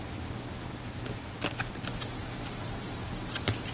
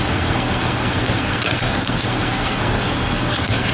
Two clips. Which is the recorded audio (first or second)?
first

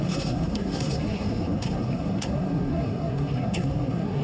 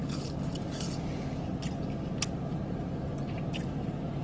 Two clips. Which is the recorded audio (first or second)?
second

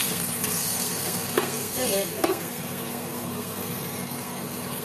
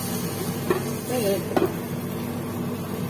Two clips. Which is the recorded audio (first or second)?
second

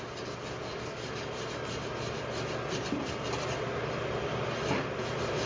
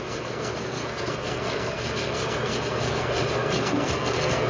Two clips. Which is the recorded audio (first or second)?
first